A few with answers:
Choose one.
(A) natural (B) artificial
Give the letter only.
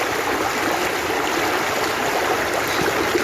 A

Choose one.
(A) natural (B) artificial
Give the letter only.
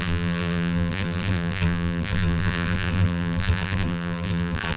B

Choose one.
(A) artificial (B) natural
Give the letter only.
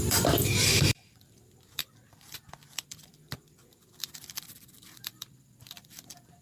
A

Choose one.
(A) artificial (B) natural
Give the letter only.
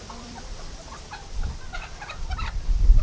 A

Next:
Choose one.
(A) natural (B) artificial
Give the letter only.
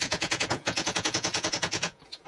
B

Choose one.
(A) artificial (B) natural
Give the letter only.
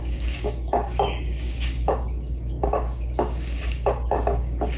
A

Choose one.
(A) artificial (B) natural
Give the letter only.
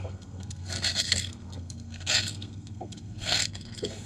A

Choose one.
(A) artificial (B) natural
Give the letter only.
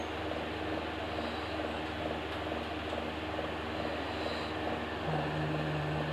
B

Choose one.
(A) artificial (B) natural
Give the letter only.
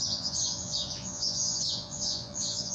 A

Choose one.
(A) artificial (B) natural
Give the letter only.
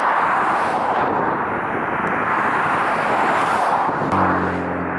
B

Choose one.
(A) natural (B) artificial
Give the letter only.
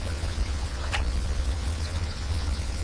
B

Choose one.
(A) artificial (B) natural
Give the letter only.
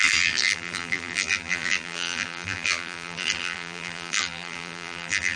A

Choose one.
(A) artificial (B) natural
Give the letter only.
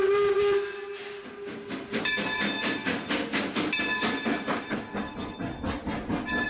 B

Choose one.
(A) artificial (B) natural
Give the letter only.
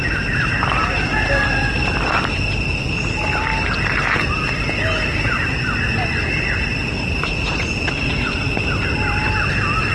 B